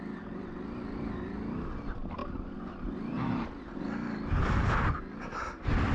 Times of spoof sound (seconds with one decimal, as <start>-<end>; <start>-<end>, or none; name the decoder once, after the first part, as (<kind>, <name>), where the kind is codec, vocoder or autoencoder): none